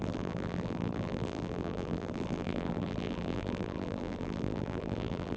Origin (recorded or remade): remade